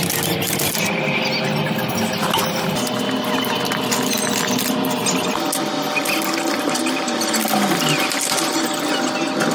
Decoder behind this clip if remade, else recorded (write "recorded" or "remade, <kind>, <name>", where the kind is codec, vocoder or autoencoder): recorded